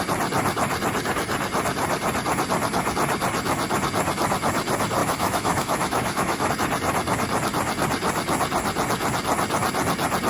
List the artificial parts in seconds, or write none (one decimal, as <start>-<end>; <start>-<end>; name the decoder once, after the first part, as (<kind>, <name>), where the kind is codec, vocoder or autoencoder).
5.0-6.5 (autoencoder, DAC-VAE)